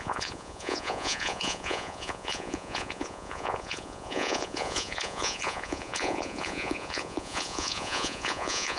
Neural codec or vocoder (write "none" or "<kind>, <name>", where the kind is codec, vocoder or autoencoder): vocoder, Vocos